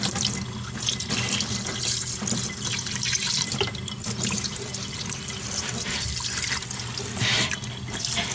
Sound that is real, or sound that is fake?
real